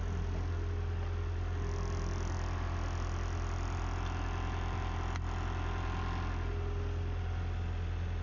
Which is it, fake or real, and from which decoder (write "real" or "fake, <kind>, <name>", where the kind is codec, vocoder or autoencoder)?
real